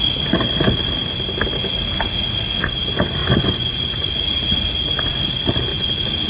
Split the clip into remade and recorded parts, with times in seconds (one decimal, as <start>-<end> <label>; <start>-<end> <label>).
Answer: 0.0-3.2 recorded; 3.2-4.1 remade; 4.1-5.7 recorded; 5.7-6.3 remade